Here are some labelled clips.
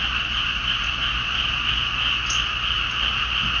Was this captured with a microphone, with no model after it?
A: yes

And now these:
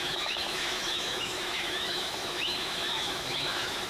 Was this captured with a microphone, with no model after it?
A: no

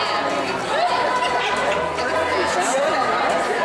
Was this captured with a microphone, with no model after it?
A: yes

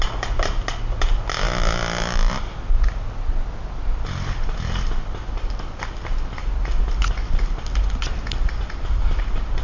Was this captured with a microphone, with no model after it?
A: yes